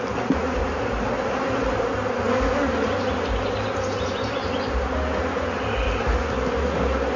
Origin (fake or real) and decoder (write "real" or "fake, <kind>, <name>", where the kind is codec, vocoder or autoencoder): real